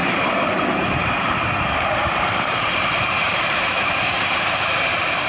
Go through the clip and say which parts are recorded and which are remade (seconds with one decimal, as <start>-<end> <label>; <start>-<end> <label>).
0.0-1.3 remade; 1.3-2.0 recorded; 2.0-5.3 remade